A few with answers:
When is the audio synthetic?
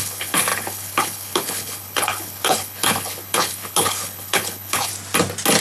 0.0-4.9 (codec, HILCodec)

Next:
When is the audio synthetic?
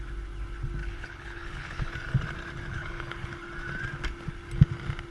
0.8-1.9 (codec, HILCodec); 2.7-3.3